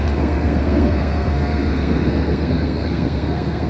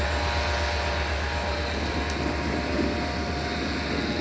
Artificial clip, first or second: first